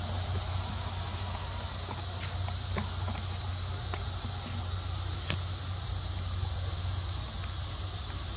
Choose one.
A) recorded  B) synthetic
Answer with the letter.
A